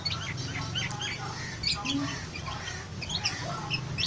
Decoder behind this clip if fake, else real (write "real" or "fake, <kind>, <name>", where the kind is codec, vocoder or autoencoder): real